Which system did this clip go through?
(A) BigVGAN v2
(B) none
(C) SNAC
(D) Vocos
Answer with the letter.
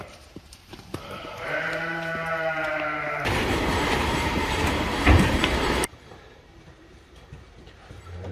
A